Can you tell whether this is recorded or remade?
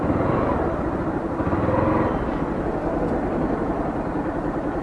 recorded